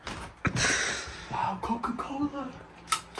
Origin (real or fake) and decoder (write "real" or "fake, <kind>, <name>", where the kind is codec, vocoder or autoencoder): real